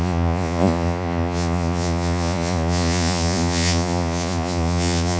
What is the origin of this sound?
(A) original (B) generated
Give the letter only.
B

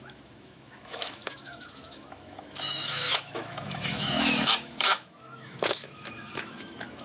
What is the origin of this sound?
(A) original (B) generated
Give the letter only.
B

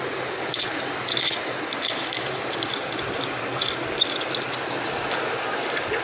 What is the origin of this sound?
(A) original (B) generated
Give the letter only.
A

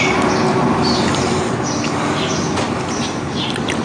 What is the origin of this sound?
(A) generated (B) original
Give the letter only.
B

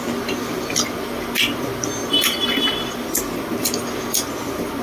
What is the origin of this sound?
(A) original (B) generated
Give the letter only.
A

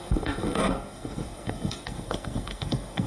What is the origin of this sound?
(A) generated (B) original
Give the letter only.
A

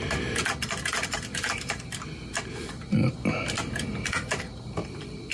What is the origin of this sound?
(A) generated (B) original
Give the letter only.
B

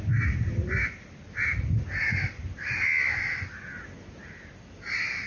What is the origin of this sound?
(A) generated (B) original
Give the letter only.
B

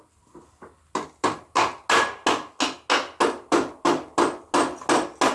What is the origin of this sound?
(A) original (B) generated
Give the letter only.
A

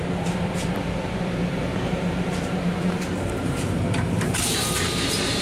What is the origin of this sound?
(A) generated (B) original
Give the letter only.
A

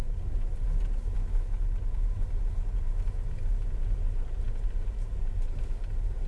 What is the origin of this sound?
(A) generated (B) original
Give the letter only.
B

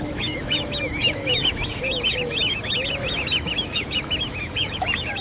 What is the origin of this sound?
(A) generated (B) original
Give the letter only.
A